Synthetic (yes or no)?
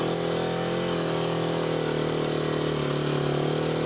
no